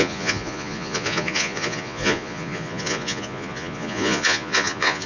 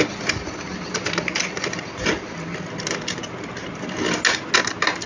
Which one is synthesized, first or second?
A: first